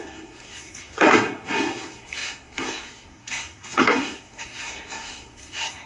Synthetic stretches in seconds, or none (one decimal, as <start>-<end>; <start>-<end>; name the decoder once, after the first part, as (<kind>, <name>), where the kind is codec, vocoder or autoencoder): 0.0-5.9 (codec, SNAC)